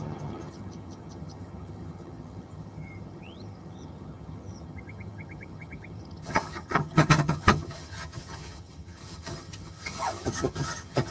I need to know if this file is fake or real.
fake